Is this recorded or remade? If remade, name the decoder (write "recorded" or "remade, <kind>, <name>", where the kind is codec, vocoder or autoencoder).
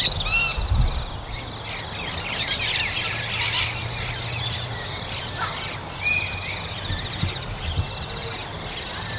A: recorded